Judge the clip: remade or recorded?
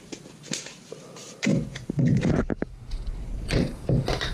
remade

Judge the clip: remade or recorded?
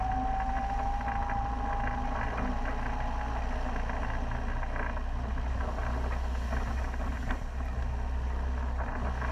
recorded